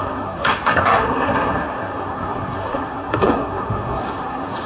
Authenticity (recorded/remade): remade